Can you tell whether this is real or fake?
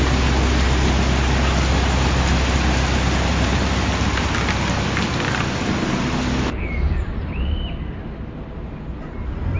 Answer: real